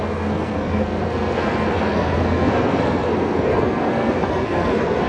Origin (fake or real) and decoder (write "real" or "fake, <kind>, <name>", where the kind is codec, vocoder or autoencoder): fake, codec, SNAC